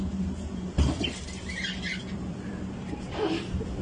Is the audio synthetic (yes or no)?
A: yes